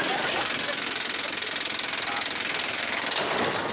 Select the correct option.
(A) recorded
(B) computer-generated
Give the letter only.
A